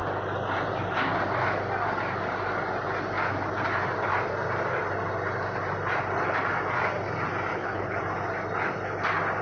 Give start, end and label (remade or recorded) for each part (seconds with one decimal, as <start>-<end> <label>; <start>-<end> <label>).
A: 0.0-7.5 recorded; 7.5-8.0 remade; 8.0-9.4 recorded